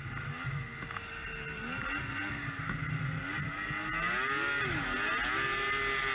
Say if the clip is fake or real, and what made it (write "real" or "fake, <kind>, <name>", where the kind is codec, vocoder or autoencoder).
real